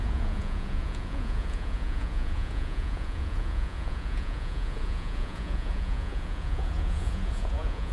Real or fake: fake